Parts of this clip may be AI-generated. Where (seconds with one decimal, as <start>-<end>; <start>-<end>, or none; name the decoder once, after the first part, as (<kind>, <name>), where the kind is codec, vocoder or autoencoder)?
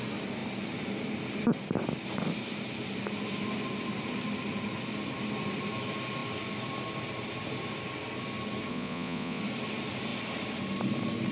8.7-9.4 (vocoder, Vocos)